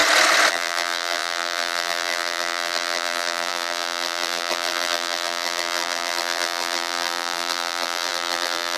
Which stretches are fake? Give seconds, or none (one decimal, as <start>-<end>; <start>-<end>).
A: 0.5-8.8